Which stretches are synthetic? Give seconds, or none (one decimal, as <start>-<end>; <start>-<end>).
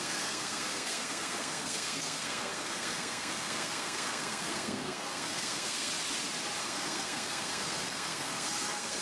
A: 0.0-5.9; 6.6-9.0